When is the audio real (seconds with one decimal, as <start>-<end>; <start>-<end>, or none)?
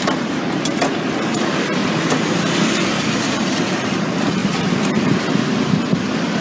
1.8-2.7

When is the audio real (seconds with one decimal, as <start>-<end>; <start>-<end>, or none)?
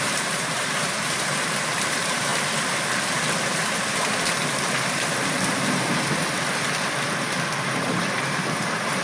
2.3-7.6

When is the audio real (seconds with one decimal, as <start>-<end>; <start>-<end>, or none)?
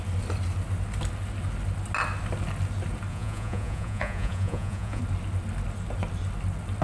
0.0-3.1; 5.0-6.8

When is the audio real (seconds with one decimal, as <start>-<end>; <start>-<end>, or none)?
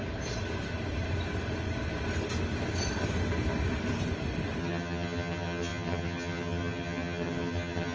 0.0-4.6